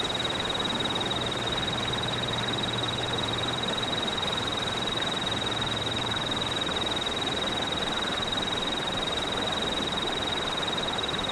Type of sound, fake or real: fake